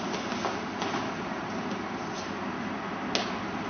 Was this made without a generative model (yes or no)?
yes